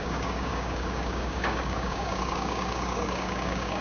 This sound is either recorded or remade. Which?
remade